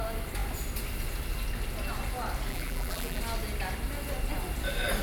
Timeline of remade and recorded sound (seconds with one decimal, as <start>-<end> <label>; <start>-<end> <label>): 0.0-2.5 recorded; 2.5-3.2 remade; 3.2-5.0 recorded